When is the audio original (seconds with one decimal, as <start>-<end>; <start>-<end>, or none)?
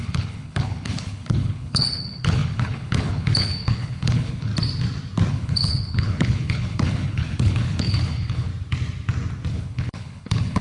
4.5-5.3; 8.5-9.5